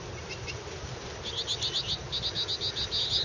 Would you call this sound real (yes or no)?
yes